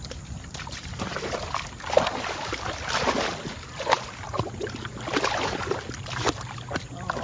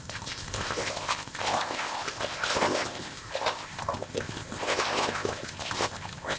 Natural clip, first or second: first